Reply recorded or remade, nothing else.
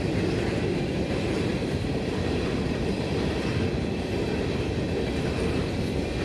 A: recorded